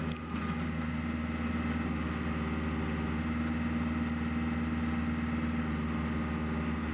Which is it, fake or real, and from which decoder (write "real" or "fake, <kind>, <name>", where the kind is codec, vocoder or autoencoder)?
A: real